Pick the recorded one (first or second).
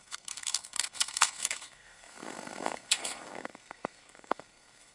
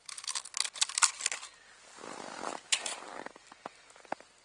second